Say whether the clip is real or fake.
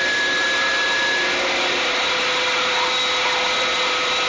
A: real